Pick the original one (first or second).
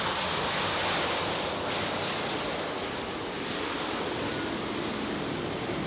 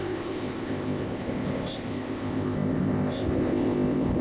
first